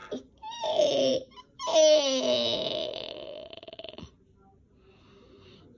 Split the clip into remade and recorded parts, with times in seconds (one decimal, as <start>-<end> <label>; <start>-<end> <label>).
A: 0.0-2.8 recorded; 2.8-4.1 remade; 4.1-5.8 recorded